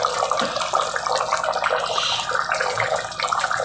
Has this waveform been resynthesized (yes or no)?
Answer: no